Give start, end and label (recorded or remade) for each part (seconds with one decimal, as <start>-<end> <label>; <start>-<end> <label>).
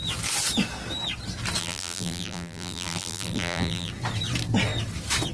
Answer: 0.0-1.6 recorded; 1.6-3.9 remade; 3.9-5.3 recorded